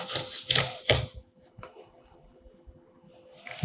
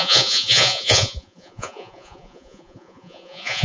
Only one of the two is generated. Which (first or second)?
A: second